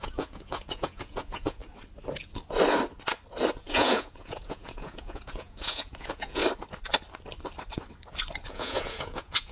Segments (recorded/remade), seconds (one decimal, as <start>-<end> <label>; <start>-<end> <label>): 0.0-1.6 remade; 1.6-3.6 recorded; 3.6-6.4 remade; 6.4-8.5 recorded; 8.5-9.5 remade